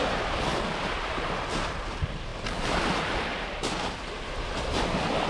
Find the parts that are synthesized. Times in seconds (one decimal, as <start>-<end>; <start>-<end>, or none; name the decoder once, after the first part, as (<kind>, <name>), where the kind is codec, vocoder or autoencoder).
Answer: none